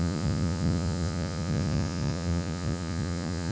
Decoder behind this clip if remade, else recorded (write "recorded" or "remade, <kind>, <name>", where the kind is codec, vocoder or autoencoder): remade, vocoder, Vocos